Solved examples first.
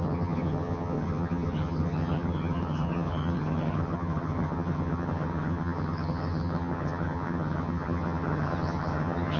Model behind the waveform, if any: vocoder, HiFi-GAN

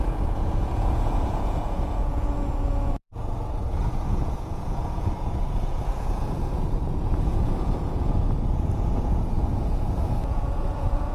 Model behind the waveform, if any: vocoder, Vocos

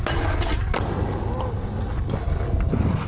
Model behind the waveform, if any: none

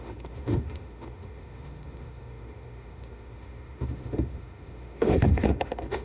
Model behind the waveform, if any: autoencoder, DAC-VAE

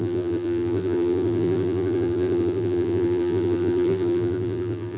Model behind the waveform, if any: vocoder, BigVGAN v2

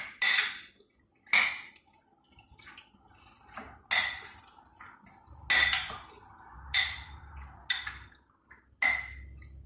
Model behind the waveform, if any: none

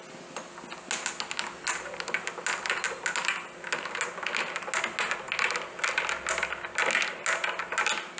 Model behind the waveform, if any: none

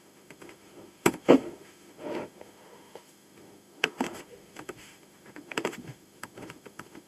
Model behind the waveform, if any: autoencoder, DAC-VAE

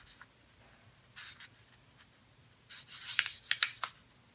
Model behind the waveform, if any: none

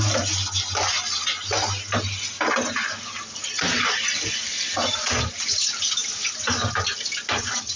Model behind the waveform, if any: none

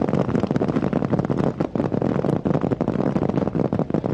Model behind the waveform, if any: none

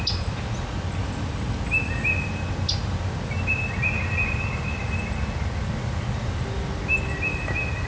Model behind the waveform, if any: none